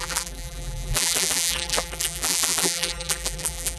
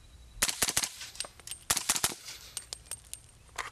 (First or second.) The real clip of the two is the second